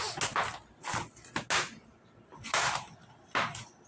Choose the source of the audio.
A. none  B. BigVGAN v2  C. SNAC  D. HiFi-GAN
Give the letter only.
A